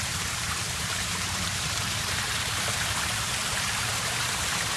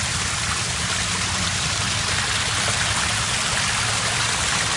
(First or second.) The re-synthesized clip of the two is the first